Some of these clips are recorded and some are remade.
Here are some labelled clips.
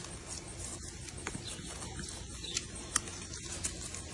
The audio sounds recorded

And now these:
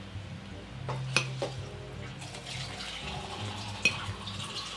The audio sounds recorded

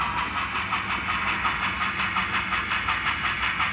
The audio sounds recorded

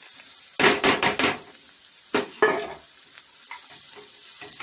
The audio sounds recorded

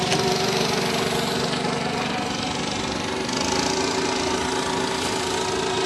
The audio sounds recorded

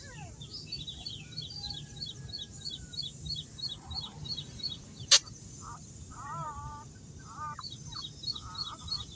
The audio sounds remade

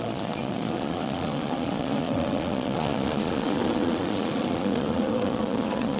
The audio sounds remade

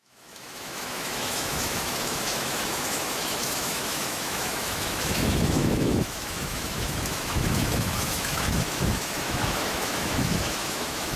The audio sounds remade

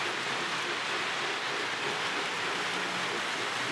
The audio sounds recorded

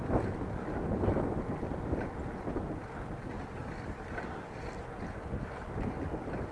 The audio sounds recorded